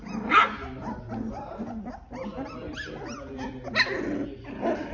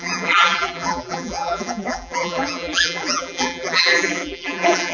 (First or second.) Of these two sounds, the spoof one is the second